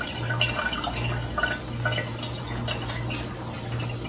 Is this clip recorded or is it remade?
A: recorded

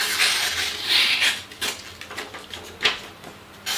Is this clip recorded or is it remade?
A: recorded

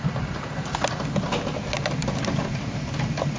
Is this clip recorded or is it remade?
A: recorded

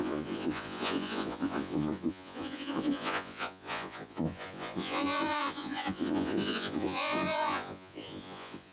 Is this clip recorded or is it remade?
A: remade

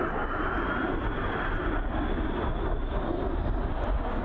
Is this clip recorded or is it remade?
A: recorded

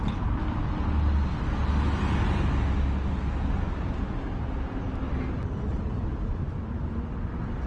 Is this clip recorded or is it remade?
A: recorded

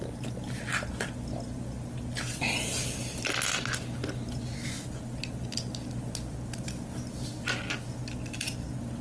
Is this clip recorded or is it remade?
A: recorded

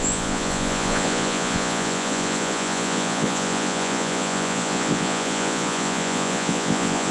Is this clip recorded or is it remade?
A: remade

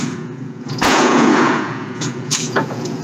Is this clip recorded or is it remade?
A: remade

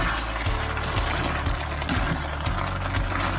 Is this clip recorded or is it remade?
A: recorded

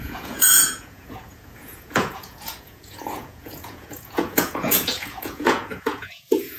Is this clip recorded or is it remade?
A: remade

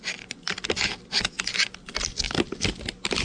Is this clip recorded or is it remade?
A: recorded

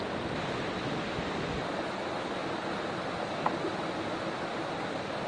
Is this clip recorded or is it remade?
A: recorded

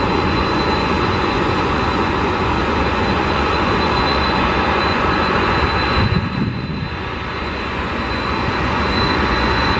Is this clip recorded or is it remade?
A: remade